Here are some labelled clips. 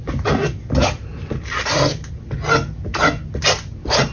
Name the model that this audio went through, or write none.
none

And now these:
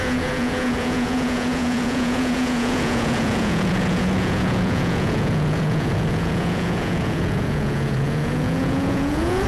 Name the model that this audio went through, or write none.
vocoder, Vocos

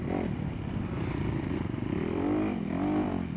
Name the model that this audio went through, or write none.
none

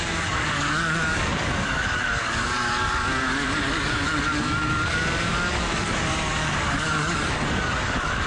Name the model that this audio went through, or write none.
codec, DAC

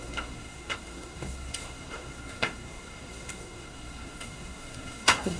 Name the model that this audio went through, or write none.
codec, SNAC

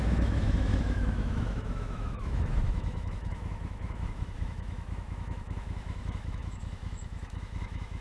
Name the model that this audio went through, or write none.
autoencoder, DAC-VAE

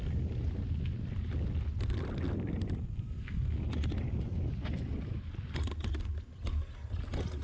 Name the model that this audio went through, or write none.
none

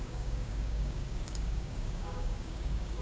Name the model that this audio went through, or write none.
codec, DAC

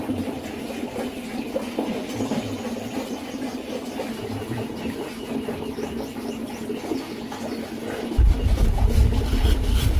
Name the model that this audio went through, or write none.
none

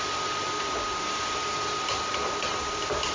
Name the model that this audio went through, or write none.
none